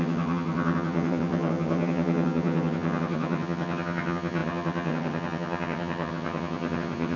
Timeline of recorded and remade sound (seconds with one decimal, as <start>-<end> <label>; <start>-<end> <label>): 0.0-7.2 remade